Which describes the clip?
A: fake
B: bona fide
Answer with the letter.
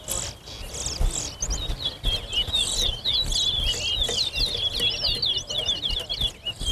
B